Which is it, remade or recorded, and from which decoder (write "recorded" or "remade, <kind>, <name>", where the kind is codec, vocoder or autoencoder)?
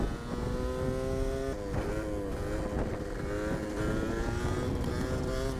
recorded